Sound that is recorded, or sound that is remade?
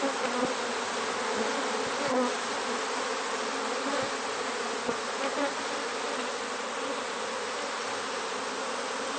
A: recorded